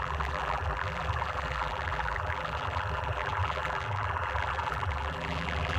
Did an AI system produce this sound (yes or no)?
yes